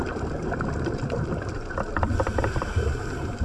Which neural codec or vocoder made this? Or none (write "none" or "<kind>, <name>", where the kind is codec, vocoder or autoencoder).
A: vocoder, BigVGAN v2